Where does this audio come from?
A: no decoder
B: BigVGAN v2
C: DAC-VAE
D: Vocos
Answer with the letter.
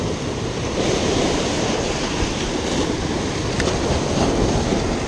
A